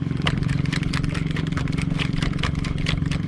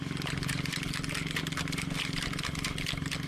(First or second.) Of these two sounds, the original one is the second